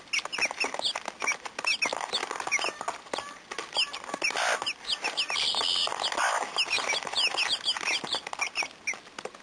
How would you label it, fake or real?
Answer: real